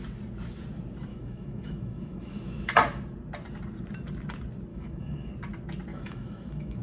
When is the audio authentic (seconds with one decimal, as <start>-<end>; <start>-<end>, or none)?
0.0-1.1; 2.7-4.7; 5.3-5.9